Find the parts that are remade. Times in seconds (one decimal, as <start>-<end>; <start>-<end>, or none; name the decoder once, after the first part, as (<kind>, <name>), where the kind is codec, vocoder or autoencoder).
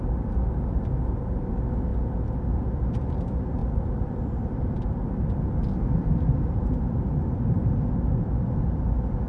1.9-3.1 (vocoder, BigVGAN v2); 3.6-8.5